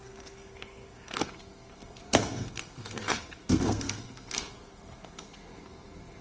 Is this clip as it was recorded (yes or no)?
no